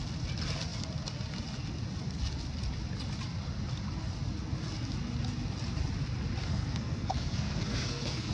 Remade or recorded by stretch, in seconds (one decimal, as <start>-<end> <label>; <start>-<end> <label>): 0.0-6.5 recorded; 6.5-8.3 remade